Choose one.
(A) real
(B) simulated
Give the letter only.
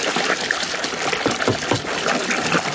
A